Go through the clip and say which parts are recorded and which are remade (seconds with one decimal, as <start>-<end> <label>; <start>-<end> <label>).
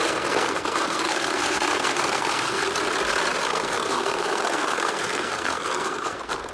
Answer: 0.0-2.6 remade; 2.6-3.5 recorded; 3.5-6.5 remade